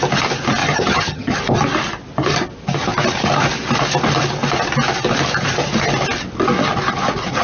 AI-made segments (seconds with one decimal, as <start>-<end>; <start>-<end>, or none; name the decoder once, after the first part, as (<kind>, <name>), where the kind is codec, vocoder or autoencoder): 0.6-1.4 (vocoder, HiFi-GAN)